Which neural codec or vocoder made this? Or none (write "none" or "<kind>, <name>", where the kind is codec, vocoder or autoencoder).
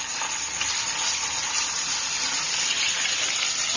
vocoder, BigVGAN v2